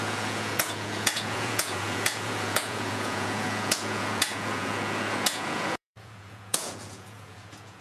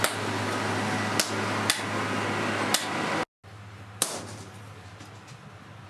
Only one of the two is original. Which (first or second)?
second